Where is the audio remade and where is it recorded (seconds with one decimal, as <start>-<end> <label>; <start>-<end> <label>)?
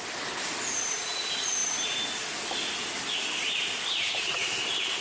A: 0.0-5.0 recorded